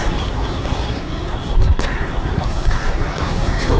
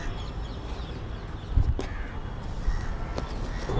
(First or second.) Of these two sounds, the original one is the second